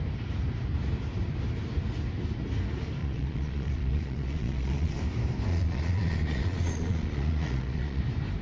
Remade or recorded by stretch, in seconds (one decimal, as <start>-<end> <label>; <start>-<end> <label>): 0.0-3.0 recorded; 3.0-5.0 remade; 5.0-5.5 recorded; 5.5-8.0 remade; 8.0-8.4 recorded